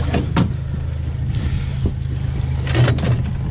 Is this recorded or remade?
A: recorded